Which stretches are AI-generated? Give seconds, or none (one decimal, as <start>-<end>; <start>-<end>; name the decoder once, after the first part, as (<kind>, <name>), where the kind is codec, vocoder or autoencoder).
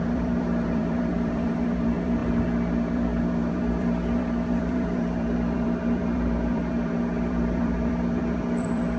0.0-2.2 (vocoder, BigVGAN v2); 2.9-9.0